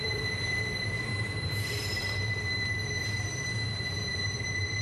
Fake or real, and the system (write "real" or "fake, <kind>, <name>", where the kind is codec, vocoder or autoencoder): fake, vocoder, BigVGAN v2